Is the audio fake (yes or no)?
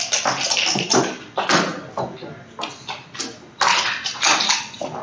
no